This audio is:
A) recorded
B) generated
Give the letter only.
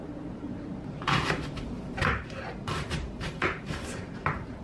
B